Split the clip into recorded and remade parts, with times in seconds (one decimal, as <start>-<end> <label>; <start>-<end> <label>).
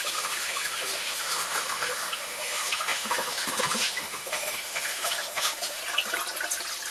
0.0-5.8 remade; 5.8-6.9 recorded